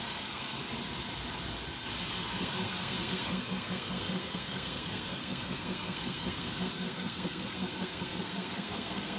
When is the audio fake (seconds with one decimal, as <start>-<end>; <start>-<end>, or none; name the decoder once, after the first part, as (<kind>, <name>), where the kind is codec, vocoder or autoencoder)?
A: 0.0-0.6 (codec, SNAC); 2.1-9.2